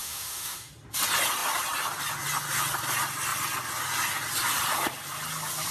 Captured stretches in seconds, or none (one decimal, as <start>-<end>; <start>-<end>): 0.7-5.7